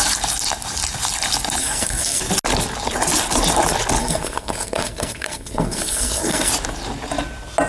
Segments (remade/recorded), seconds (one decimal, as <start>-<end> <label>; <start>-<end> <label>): 0.0-1.6 recorded; 1.6-2.2 remade; 2.2-4.0 recorded; 4.0-6.5 remade; 6.5-7.7 recorded